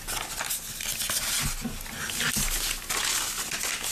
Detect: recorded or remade recorded